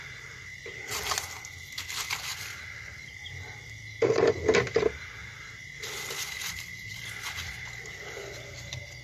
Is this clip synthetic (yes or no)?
no